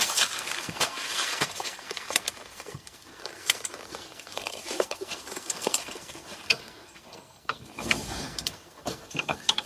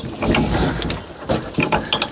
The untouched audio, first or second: second